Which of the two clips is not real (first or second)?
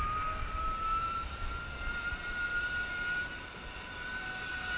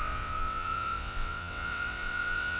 second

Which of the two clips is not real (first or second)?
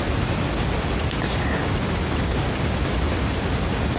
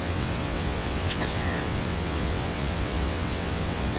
second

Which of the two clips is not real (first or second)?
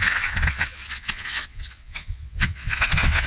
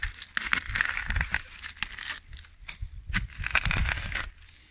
first